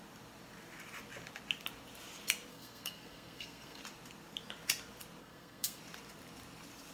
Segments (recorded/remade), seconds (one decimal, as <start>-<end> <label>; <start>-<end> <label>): 0.0-2.5 recorded; 2.5-3.8 remade; 3.8-5.2 recorded; 5.2-5.8 remade; 5.8-6.9 recorded